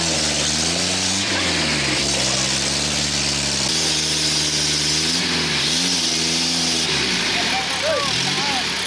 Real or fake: real